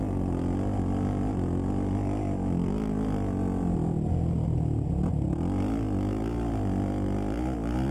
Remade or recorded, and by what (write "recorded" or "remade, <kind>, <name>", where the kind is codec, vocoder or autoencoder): recorded